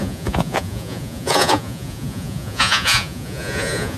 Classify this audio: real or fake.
fake